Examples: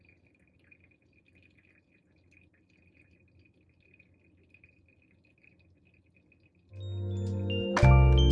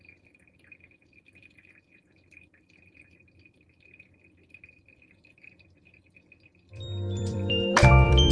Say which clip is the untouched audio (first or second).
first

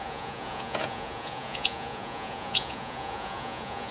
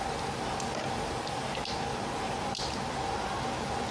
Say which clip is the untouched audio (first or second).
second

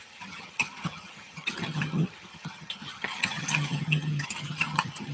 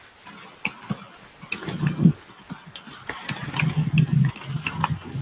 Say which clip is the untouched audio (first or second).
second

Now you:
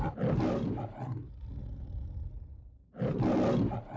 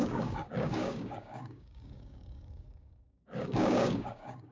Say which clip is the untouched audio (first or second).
first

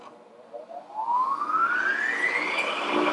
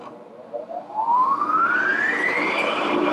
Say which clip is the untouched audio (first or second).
first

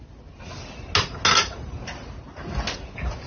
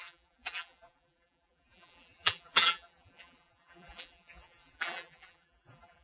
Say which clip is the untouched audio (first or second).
first